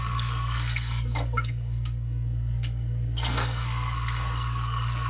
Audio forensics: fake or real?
fake